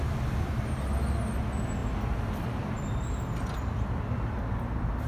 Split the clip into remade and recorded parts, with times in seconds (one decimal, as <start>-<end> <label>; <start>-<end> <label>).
0.0-0.5 remade; 0.5-5.1 recorded